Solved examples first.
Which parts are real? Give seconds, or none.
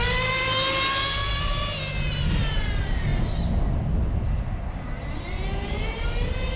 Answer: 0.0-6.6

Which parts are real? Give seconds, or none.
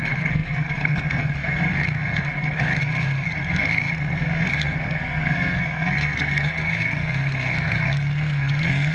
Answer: 2.7-3.4